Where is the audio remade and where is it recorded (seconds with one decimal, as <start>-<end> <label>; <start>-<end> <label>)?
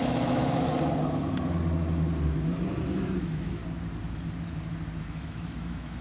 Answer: 0.0-0.7 remade; 0.7-3.2 recorded; 3.2-3.6 remade; 3.6-5.0 recorded; 5.0-6.0 remade